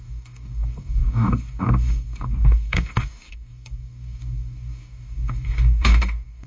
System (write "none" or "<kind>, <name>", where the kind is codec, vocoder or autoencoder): codec, DAC